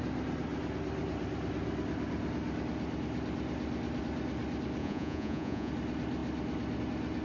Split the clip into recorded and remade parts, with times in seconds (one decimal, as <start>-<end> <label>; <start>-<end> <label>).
0.0-4.8 recorded; 4.8-5.7 remade; 5.7-7.2 recorded